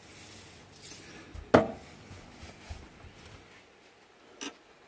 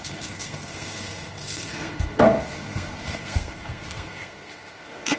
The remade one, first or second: second